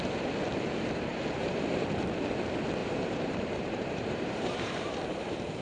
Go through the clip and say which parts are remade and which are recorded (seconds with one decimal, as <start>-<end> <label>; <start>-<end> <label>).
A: 0.0-1.1 recorded; 1.1-1.6 remade; 1.6-2.8 recorded; 2.8-5.6 remade

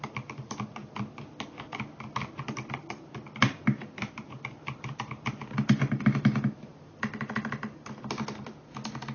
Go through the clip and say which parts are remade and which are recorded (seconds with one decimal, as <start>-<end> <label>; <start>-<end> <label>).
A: 0.0-3.4 recorded; 3.4-5.3 remade; 5.3-9.1 recorded